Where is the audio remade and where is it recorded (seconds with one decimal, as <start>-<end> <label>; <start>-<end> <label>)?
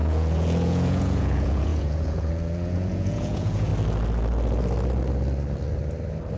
0.0-3.7 remade; 3.7-6.4 recorded